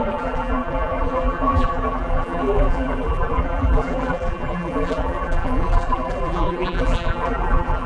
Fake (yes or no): yes